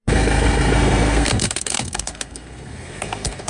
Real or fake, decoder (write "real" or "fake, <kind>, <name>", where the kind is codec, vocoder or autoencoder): fake, codec, SNAC